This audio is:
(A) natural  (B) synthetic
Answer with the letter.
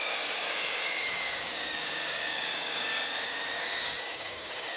B